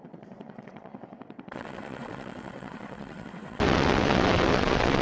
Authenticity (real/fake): fake